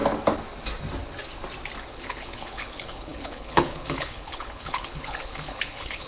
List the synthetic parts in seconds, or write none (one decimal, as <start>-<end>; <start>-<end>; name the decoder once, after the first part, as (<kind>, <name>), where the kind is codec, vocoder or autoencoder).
1.9-6.1 (codec, HILCodec)